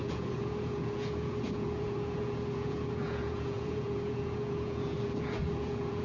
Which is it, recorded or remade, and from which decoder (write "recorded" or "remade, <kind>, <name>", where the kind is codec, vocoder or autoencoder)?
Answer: remade, vocoder, Vocos